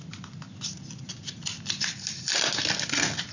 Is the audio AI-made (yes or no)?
no